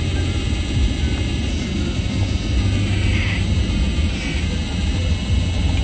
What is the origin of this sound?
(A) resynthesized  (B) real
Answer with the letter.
B